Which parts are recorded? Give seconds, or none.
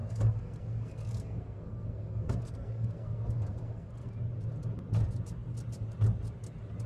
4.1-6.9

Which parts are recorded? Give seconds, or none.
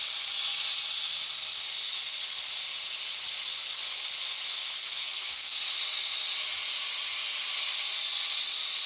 0.0-4.8; 5.6-8.9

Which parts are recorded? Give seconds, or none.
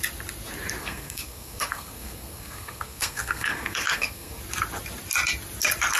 0.0-0.8; 4.4-6.0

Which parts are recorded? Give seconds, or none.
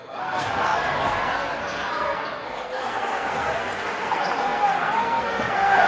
none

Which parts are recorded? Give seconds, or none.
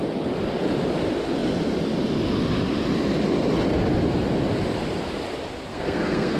0.0-5.7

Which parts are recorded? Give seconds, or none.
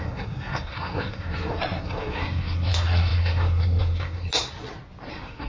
4.3-5.1